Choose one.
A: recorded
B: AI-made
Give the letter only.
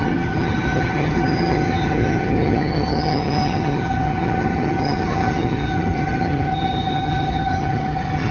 B